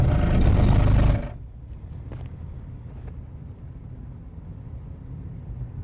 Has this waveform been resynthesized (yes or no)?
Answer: no